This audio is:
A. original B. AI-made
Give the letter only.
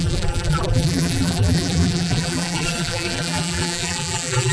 B